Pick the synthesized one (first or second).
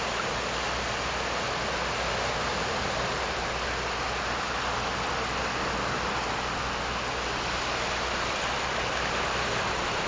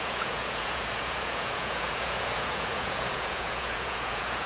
second